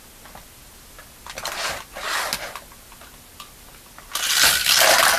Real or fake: real